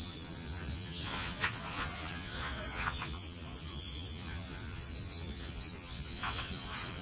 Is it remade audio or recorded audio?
remade